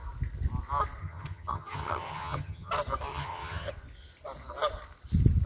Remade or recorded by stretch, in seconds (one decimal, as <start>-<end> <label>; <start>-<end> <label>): 0.0-1.0 recorded; 1.0-2.7 remade; 2.7-3.1 recorded; 3.1-3.7 remade; 3.7-5.5 recorded